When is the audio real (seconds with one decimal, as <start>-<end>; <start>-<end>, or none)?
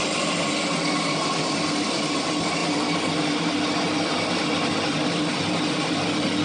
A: 0.0-6.4